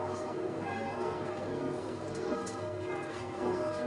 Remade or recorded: remade